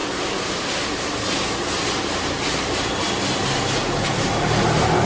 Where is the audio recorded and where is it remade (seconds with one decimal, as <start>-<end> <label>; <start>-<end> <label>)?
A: 0.0-5.1 recorded